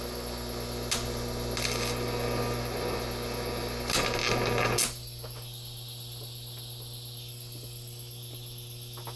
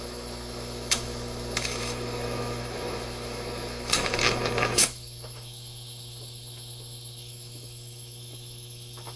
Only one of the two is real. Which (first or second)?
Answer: first